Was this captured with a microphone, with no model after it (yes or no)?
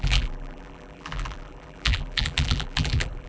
no